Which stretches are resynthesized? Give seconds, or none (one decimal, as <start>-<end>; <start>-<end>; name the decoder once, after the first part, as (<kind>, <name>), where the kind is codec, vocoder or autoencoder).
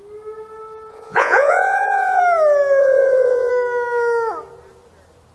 0.9-2.2 (vocoder, Vocos); 2.8-3.5